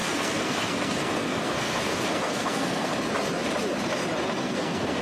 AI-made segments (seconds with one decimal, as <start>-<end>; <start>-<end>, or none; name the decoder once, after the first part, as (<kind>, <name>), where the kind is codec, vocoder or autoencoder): 0.0-2.9 (codec, SNAC); 4.4-5.0